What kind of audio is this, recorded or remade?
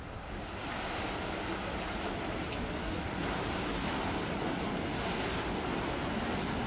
recorded